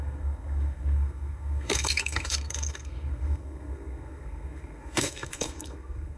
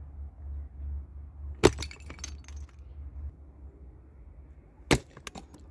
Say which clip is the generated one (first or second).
first